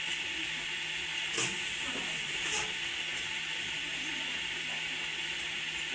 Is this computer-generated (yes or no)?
no